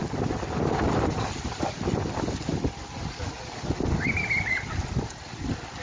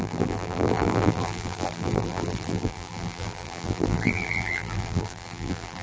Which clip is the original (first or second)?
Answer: first